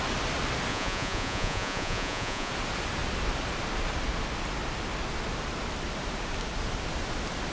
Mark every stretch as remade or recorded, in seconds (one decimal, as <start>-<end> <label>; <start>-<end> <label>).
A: 0.0-0.7 recorded; 0.7-2.5 remade; 2.5-7.5 recorded